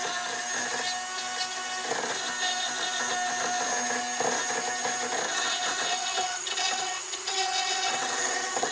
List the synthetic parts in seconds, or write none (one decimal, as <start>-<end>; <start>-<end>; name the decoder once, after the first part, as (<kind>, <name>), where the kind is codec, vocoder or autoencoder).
5.3-8.7 (vocoder, WaveNeXt)